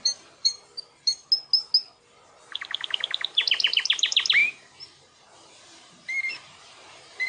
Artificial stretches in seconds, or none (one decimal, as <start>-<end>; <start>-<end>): 0.0-0.6; 2.5-7.3